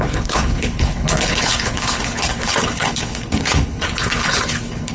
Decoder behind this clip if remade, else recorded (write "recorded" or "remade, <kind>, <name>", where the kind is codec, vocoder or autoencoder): remade, codec, HILCodec